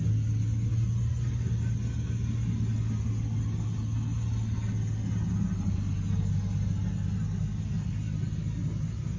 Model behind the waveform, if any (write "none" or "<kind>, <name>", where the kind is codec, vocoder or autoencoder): none